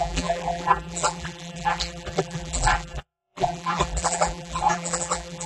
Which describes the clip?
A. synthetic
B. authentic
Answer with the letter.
A